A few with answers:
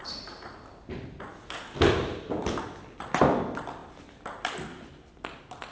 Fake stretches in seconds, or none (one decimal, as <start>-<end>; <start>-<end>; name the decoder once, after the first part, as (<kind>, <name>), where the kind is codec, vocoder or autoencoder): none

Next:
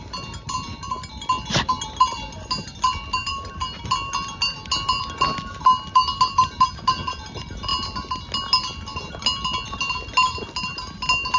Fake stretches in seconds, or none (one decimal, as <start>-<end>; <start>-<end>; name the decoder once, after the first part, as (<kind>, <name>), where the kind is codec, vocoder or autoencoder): 3.3-3.8 (vocoder, BigVGAN v2)

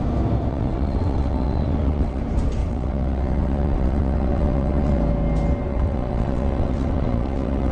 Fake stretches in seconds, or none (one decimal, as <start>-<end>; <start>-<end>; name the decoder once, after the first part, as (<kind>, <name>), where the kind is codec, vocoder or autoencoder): 0.5-2.2 (vocoder, WaveNeXt); 2.6-5.0; 5.7-7.7

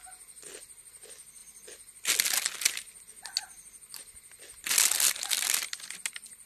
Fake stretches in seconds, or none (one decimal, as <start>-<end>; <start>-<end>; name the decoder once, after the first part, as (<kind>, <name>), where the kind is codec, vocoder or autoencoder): none

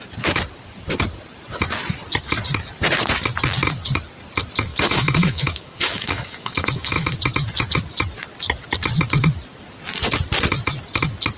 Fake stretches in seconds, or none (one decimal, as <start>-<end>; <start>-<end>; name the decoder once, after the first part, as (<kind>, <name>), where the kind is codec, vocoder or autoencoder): 4.7-7.1 (autoencoder, DAC-VAE)